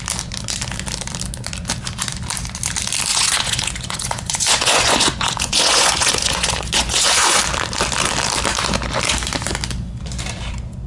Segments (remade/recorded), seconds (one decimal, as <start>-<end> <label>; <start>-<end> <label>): 0.0-3.1 recorded; 3.1-7.4 remade; 7.4-10.9 recorded